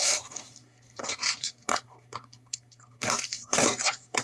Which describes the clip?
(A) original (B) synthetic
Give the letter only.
B